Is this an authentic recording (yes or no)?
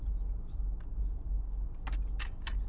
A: yes